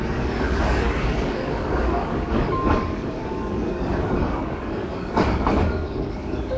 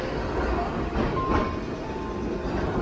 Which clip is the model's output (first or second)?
first